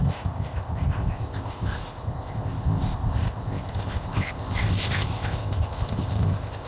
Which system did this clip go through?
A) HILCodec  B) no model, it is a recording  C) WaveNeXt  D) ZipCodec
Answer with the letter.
D